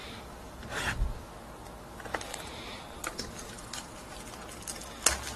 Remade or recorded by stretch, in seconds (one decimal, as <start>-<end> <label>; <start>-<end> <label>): 0.0-2.3 recorded; 2.3-4.2 remade; 4.2-5.4 recorded